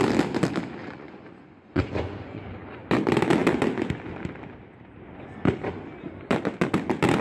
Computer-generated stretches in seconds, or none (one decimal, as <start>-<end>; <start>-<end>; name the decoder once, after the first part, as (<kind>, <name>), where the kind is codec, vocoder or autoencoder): 0.8-2.5 (vocoder, Vocos)